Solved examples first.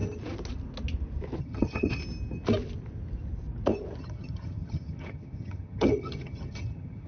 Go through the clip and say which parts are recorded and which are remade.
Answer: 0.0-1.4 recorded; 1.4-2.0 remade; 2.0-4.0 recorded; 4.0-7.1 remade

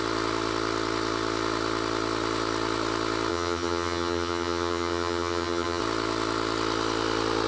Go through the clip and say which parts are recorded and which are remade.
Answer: 0.0-3.3 recorded; 3.3-5.8 remade; 5.8-7.5 recorded

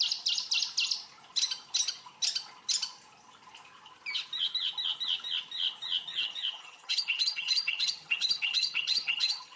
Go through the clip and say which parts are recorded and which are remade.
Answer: 0.0-6.1 recorded; 6.1-9.6 remade

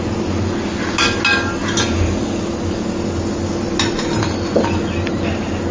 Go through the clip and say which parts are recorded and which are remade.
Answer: 0.0-5.7 recorded

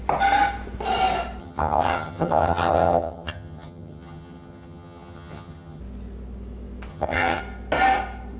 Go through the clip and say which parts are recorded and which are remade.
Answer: 0.0-1.4 recorded; 1.4-5.8 remade; 5.8-6.9 recorded; 6.9-7.4 remade; 7.4-8.4 recorded

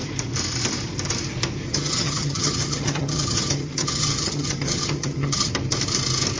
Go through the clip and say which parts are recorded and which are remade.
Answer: 0.0-1.7 recorded; 1.7-5.5 remade; 5.5-6.4 recorded

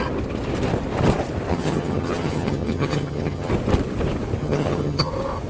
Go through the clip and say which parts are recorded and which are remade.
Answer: 0.0-1.5 recorded; 1.5-3.5 remade; 3.5-4.4 recorded; 4.4-5.1 remade; 5.1-5.5 recorded